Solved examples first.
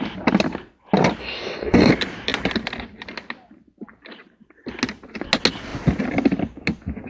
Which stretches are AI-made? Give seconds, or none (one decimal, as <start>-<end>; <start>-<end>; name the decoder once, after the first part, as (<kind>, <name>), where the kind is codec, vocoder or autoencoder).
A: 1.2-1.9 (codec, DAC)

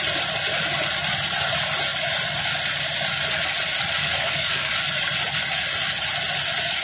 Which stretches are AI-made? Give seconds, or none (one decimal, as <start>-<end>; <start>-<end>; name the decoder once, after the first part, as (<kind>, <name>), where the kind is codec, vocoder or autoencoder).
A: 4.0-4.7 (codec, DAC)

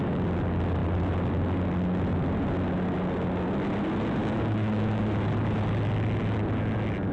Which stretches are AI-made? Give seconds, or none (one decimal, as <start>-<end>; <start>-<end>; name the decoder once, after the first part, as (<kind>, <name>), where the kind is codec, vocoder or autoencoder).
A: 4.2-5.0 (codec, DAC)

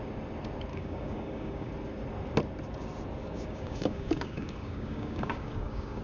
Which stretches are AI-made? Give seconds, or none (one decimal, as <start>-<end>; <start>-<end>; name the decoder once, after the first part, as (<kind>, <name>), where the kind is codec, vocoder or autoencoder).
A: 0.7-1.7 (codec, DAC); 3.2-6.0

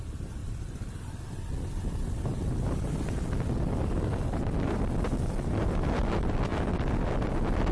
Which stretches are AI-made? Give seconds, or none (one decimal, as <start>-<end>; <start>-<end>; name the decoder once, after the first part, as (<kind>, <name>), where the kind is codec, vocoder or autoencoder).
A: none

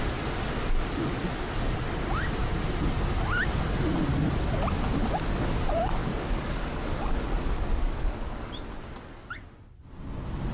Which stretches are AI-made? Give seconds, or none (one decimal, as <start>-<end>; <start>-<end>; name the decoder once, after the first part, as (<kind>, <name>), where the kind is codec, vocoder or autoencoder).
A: 6.0-8.5 (codec, DAC)

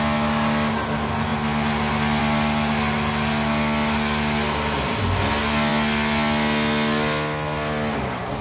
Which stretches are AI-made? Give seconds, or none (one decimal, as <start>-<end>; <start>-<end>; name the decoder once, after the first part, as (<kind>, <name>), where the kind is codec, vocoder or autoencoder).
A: none